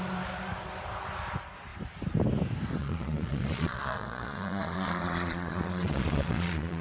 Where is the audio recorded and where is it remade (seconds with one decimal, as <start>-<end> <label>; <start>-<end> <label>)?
0.0-2.8 recorded; 2.8-6.8 remade